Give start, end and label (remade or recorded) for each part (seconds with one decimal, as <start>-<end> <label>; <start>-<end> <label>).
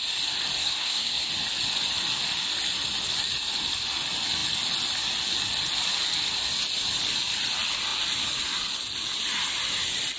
0.0-0.6 recorded; 0.6-1.3 remade; 1.3-10.2 recorded